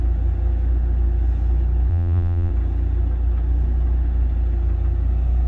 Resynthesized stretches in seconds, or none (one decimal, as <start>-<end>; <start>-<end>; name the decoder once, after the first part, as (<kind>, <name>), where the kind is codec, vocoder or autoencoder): 1.9-2.5 (vocoder, BigVGAN v2)